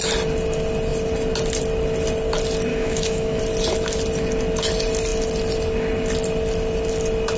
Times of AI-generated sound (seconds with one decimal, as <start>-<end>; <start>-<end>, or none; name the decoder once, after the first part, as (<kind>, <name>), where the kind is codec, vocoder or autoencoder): 2.7-3.4 (autoencoder, DAC-VAE)